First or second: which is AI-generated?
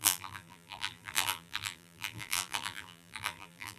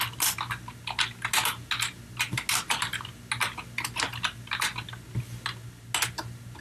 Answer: first